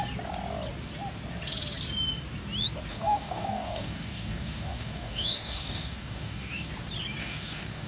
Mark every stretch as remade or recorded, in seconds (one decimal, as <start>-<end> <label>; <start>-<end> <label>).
0.0-2.9 recorded; 2.9-6.7 remade; 6.7-7.2 recorded; 7.2-7.9 remade